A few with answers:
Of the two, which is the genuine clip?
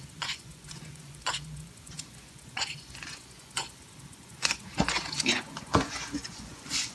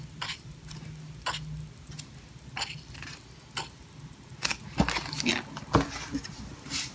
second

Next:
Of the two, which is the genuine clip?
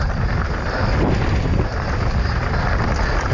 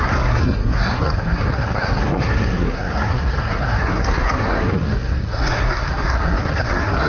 first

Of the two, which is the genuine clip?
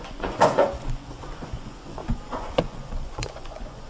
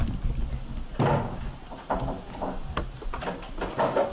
second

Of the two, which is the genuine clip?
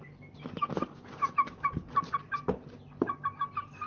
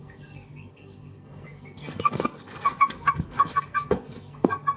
first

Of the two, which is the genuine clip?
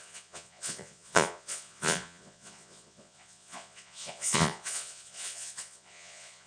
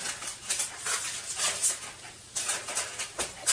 second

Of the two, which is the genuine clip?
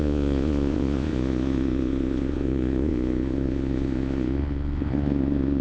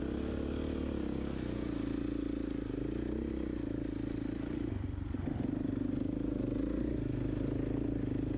second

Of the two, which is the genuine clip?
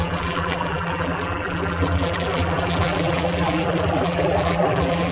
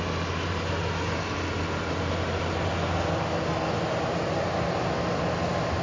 second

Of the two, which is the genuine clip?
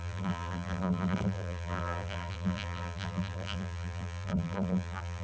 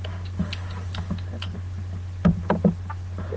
second